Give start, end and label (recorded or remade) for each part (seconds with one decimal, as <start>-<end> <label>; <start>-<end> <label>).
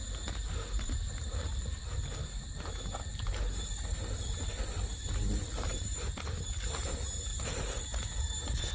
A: 0.0-7.3 recorded; 7.3-8.2 remade; 8.2-8.7 recorded